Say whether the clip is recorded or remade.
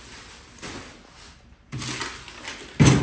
recorded